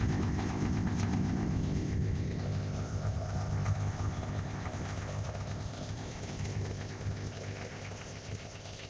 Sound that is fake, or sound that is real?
fake